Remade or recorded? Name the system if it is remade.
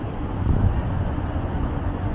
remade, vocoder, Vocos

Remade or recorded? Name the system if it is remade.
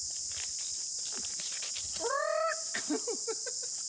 recorded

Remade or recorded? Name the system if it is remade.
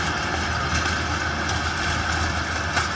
recorded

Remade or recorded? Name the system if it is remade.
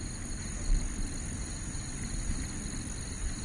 recorded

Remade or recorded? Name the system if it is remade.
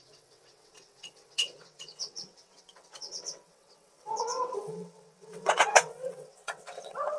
remade, vocoder, WaveNeXt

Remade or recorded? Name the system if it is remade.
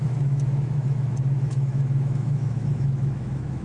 remade, autoencoder, DAC-VAE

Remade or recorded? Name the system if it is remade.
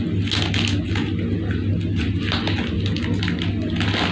recorded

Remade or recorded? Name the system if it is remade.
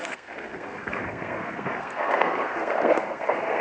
remade, codec, SNAC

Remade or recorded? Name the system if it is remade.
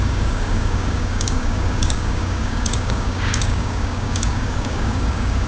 remade, codec, DAC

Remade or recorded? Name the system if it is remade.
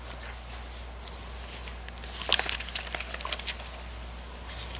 recorded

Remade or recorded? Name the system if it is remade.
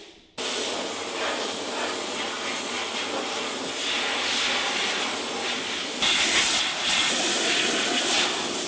recorded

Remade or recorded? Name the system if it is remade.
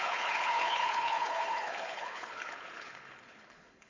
remade, codec, HILCodec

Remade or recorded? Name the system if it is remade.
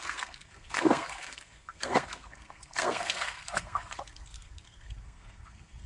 remade, codec, SNAC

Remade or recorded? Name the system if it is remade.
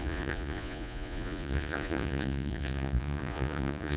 remade, vocoder, Vocos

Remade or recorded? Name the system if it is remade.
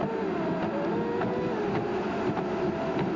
recorded